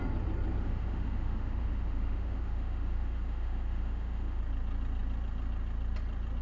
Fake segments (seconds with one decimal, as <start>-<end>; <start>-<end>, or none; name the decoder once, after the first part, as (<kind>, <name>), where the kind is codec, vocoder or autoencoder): 0.6-4.4 (autoencoder, DAC-VAE)